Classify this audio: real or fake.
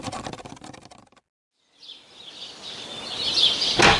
real